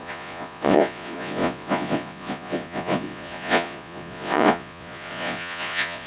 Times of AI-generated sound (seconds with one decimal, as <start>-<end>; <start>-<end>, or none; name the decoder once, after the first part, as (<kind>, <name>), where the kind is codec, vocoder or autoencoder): 0.0-6.1 (vocoder, Vocos)